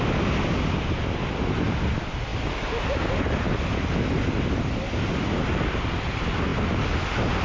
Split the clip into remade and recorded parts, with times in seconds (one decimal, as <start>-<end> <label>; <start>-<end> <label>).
0.0-7.4 recorded